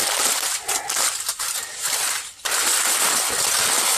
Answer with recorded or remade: recorded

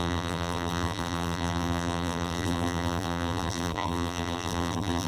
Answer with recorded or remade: remade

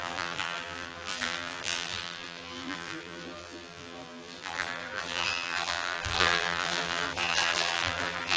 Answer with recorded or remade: remade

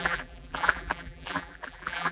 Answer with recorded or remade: remade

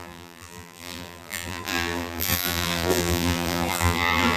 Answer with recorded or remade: remade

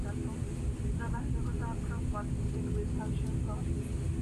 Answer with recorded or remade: recorded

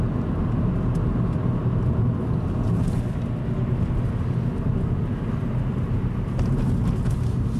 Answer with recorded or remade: recorded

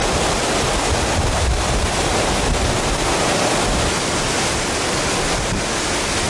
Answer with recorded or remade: recorded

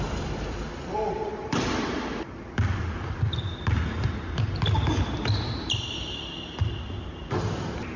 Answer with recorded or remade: remade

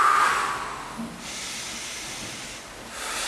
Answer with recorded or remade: recorded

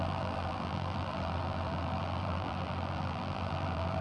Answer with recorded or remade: remade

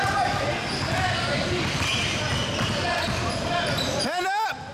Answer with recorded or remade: recorded